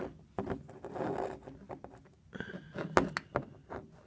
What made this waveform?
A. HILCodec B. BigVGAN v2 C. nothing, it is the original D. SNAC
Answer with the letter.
C